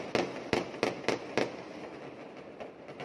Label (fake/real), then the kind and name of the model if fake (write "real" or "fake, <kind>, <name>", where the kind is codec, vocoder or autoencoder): real